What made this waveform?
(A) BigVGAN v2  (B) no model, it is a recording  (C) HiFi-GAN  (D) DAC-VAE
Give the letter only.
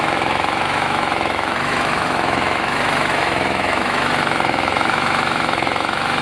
D